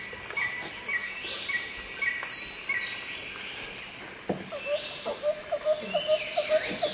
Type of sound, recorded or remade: recorded